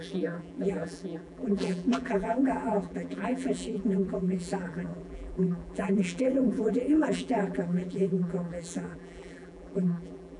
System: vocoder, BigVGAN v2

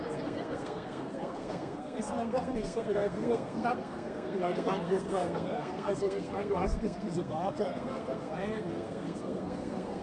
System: codec, SNAC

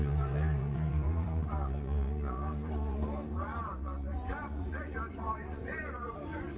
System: vocoder, Vocos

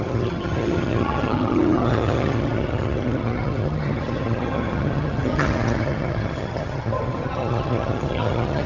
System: vocoder, HiFi-GAN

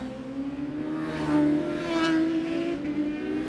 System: none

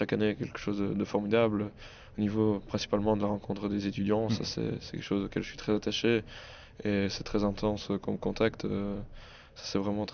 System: none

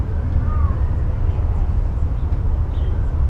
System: none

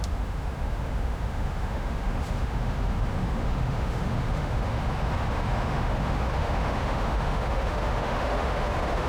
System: autoencoder, DAC-VAE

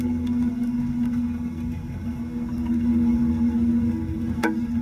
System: codec, SNAC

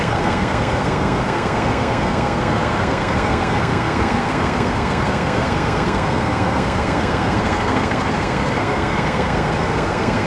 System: codec, SNAC